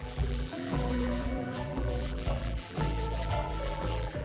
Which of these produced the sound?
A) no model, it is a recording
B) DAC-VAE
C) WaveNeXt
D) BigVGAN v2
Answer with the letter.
D